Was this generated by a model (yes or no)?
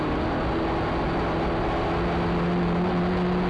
no